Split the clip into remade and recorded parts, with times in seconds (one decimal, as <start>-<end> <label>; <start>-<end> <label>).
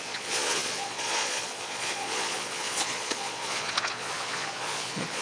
0.0-5.2 remade